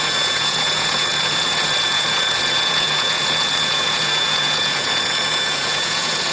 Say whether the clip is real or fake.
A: fake